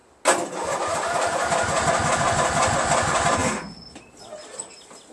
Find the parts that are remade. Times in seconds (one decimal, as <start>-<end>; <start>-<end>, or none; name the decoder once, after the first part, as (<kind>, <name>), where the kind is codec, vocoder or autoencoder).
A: none